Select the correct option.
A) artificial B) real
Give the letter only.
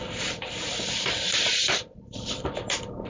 A